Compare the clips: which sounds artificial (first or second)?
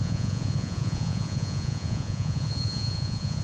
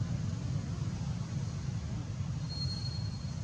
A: first